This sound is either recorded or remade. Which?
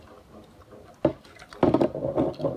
recorded